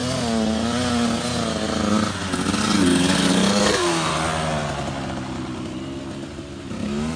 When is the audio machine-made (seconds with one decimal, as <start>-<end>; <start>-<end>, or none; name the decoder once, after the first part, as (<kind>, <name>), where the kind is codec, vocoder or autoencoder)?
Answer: 2.8-4.1 (codec, DAC); 6.7-7.2